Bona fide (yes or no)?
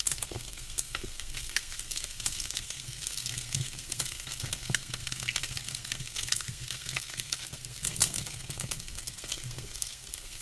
no